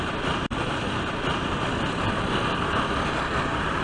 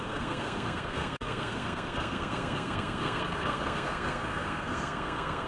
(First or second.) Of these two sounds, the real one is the first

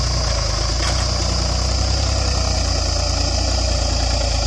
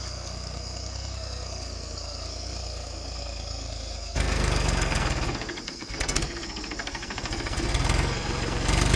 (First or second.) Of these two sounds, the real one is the first